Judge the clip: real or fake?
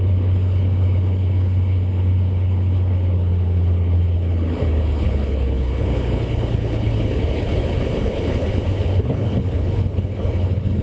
fake